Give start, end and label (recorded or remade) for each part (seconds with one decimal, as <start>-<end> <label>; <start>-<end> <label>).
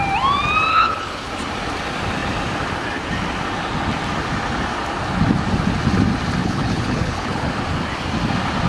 0.0-0.7 recorded; 0.7-1.3 remade; 1.3-6.4 recorded; 6.4-7.5 remade; 7.5-8.7 recorded